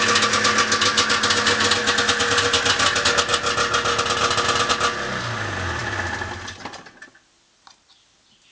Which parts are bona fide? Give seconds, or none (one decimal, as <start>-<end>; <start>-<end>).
0.0-8.5